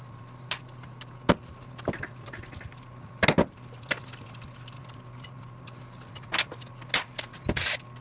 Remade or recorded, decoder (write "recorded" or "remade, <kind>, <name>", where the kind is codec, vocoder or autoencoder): recorded